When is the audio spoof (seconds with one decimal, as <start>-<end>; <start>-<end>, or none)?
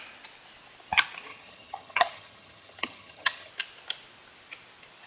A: 1.3-3.5